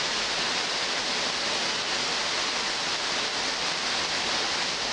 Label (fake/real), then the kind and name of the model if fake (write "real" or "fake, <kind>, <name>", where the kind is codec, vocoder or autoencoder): real